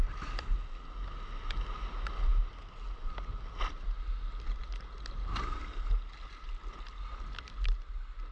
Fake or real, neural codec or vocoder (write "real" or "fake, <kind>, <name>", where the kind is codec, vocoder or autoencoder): real